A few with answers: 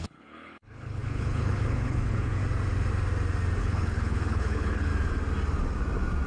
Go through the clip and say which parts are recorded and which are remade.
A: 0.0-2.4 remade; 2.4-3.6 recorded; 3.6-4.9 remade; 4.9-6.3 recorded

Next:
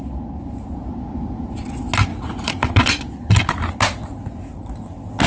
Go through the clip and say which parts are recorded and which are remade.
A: 0.0-2.1 recorded; 2.1-3.0 remade; 3.0-5.3 recorded

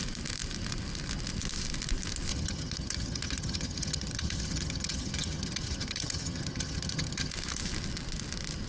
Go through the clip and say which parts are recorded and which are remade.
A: 0.0-2.3 recorded; 2.3-7.3 remade; 7.3-8.7 recorded

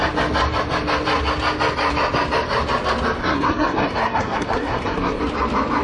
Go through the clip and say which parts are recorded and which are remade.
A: 0.0-3.2 recorded; 3.2-5.2 remade; 5.2-5.8 recorded

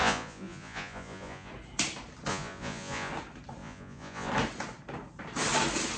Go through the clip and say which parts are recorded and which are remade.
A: 0.0-1.5 remade; 1.5-2.3 recorded; 2.3-3.1 remade; 3.1-3.6 recorded; 3.6-4.3 remade; 4.3-6.0 recorded

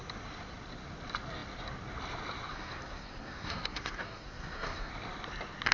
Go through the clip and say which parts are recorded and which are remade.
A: 0.0-2.5 recorded; 2.5-4.9 remade; 4.9-5.7 recorded